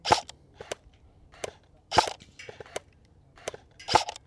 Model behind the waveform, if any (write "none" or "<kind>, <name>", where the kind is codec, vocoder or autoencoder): vocoder, BigVGAN v2